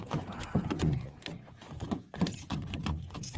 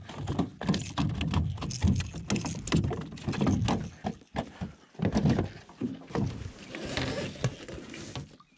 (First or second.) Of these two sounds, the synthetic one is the first